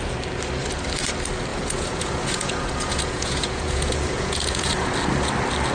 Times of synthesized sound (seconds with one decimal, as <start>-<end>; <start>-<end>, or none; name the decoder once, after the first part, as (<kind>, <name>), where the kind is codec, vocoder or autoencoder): 1.5-4.9 (vocoder, Vocos)